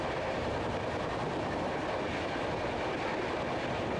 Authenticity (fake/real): real